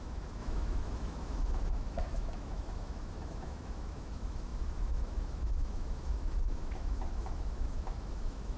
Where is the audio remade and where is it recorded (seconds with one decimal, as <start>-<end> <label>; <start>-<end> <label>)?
0.0-8.6 remade